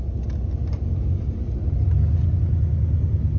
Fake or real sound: real